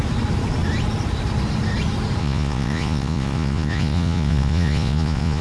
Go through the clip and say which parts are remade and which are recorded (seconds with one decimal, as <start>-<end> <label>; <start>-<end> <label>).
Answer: 0.0-2.2 recorded; 2.2-5.4 remade

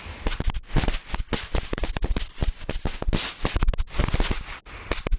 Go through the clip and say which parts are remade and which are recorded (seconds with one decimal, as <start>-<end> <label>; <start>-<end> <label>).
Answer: 0.0-5.2 recorded